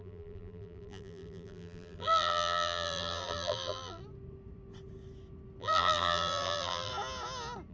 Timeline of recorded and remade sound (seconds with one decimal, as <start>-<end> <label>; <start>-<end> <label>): 0.0-4.0 remade; 4.0-5.6 recorded; 5.6-6.9 remade; 6.9-7.7 recorded